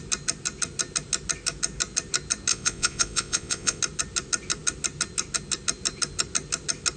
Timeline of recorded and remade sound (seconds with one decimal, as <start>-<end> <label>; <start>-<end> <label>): 0.0-2.5 recorded; 2.5-3.8 remade; 3.8-7.0 recorded